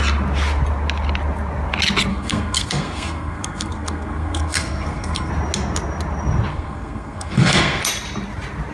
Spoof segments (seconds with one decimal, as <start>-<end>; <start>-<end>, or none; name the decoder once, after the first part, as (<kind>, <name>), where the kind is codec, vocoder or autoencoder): 2.1-5.3 (codec, SNAC); 6.5-7.8